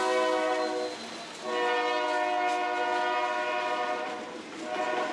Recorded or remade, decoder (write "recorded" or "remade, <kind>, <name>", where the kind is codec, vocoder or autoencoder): recorded